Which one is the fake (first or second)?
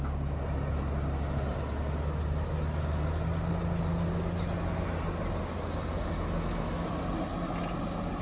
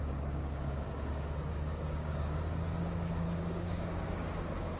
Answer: second